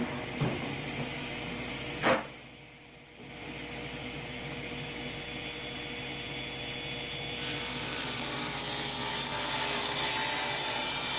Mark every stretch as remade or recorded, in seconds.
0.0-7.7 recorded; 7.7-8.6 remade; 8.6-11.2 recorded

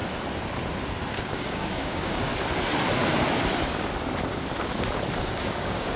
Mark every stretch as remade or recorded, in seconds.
0.0-1.2 recorded; 1.2-2.3 remade; 2.3-5.2 recorded; 5.2-6.0 remade

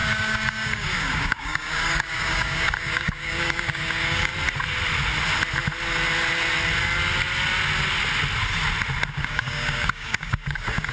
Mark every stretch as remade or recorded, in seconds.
0.0-4.3 remade; 4.3-9.1 recorded; 9.1-10.9 remade

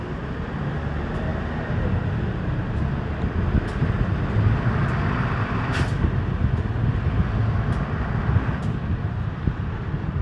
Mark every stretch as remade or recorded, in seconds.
0.0-10.2 recorded

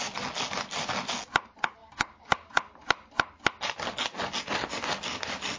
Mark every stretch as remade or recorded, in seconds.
0.0-1.8 recorded; 1.8-2.5 remade; 2.5-5.6 recorded

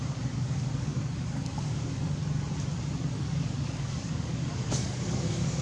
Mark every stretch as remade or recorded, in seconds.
0.0-2.2 remade; 2.2-3.1 recorded; 3.1-5.6 remade

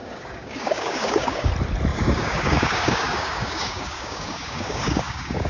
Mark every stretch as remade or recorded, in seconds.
0.0-1.5 remade; 1.5-1.9 recorded; 1.9-5.5 remade

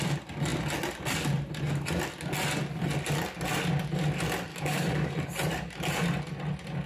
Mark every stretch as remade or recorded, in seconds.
0.0-4.5 recorded; 4.5-5.1 remade; 5.1-6.9 recorded